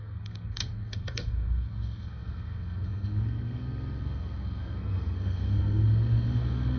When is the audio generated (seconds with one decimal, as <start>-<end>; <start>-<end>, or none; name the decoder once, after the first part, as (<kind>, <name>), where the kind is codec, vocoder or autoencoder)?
0.0-6.8 (codec, SNAC)